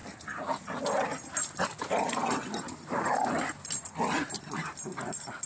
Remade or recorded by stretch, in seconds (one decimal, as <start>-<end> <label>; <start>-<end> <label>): 0.0-5.5 recorded